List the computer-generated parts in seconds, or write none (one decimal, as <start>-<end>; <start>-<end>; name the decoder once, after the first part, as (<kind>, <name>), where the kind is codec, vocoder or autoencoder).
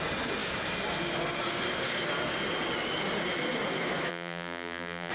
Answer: 4.1-5.1 (vocoder, BigVGAN v2)